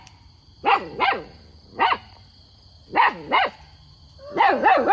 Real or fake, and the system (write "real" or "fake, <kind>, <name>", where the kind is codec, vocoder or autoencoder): real